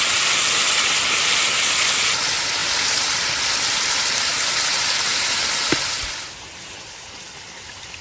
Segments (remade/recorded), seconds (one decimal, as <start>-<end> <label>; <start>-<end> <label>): 0.0-5.1 remade; 5.1-5.9 recorded; 5.9-8.0 remade